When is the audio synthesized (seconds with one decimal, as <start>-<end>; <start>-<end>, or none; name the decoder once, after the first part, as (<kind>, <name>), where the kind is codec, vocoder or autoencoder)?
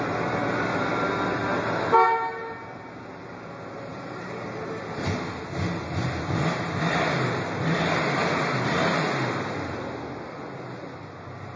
3.9-4.7 (vocoder, BigVGAN v2)